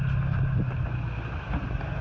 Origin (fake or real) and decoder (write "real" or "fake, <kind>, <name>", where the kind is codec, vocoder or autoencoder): real